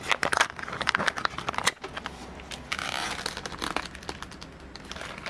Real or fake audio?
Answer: real